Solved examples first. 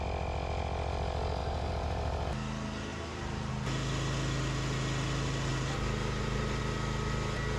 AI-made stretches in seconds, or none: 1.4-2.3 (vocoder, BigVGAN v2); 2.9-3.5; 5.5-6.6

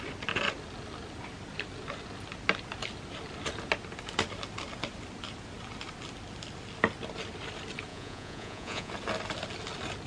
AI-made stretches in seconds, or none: 7.9-8.9 (vocoder, Vocos)